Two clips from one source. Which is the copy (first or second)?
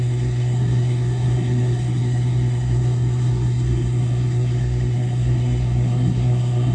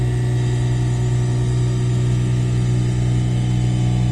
first